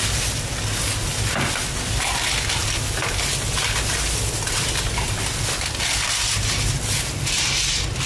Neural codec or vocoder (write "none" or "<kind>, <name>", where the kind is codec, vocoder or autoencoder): none